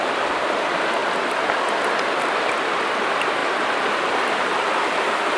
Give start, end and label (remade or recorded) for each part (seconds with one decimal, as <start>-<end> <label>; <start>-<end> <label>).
0.0-5.4 recorded